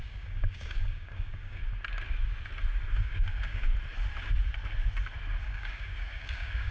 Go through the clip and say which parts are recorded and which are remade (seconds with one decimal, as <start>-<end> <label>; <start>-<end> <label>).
0.0-1.6 remade; 1.6-2.9 recorded; 2.9-3.7 remade; 3.7-5.4 recorded; 5.4-6.7 remade